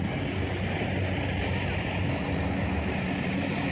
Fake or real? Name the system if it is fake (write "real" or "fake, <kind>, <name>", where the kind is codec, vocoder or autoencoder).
real